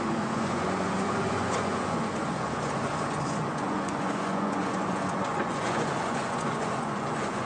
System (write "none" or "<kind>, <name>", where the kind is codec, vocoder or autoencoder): vocoder, Vocos